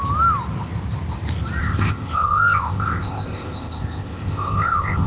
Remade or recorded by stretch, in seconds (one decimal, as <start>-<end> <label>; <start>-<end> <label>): 0.0-1.6 recorded; 1.6-5.1 remade